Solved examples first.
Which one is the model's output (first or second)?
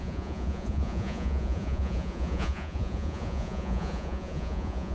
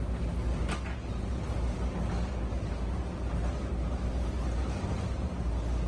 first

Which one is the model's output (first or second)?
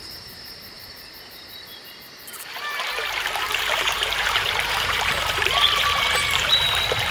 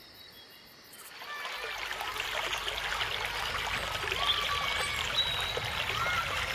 first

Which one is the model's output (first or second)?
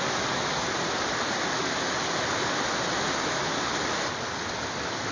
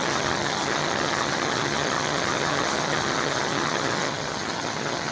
second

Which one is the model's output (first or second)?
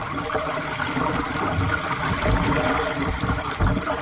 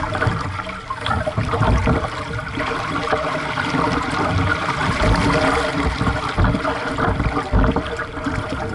first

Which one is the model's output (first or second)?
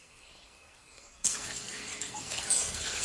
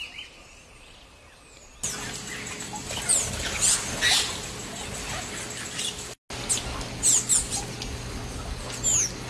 first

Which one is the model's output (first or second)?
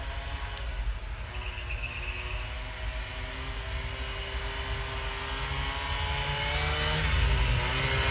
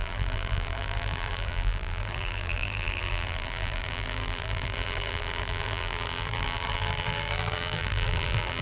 second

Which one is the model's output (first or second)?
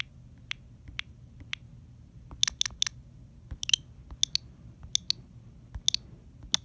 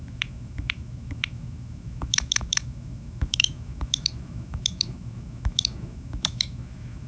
second